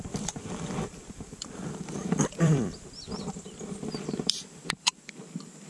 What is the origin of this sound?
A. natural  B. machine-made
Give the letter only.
B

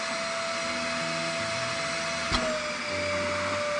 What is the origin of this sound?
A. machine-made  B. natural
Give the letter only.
B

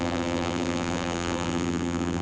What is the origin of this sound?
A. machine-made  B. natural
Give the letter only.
A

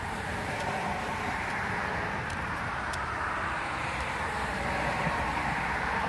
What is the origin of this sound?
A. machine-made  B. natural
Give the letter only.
A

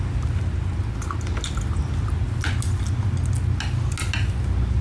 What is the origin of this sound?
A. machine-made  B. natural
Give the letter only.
B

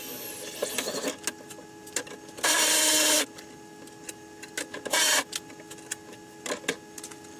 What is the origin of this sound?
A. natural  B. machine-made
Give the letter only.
A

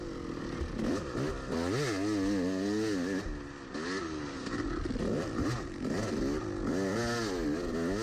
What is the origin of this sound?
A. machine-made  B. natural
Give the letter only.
B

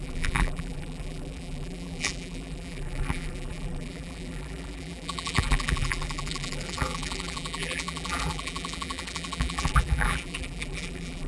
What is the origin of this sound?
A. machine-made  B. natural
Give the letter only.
A